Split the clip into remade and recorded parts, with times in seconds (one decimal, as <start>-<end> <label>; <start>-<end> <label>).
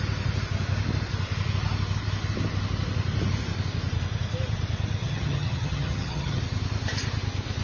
0.0-5.0 recorded; 5.0-6.4 remade; 6.4-7.6 recorded